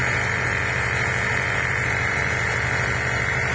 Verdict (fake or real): fake